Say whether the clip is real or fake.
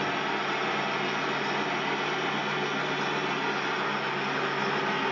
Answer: real